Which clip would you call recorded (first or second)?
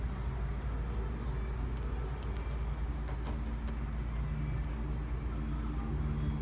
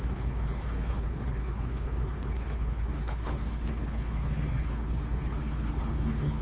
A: first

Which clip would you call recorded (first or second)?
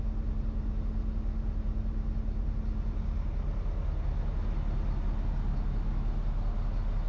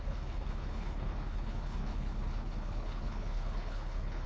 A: first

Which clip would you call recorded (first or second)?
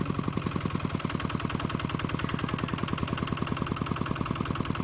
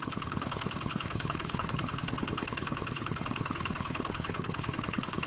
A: first